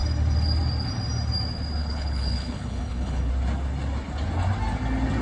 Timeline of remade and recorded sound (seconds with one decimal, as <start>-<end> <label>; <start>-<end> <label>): 0.0-1.8 recorded; 1.8-3.3 remade; 3.3-5.2 recorded